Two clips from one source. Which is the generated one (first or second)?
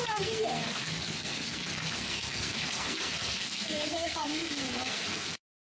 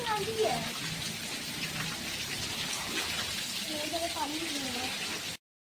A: first